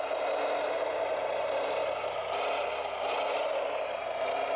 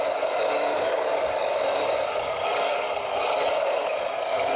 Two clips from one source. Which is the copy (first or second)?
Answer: second